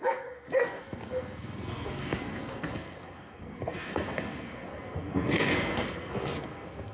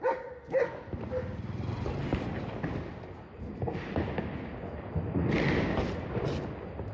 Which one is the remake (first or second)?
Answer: first